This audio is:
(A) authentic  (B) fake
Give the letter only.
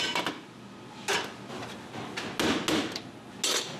A